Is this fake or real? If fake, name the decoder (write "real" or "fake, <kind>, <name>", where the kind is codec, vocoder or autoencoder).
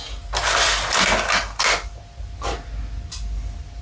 real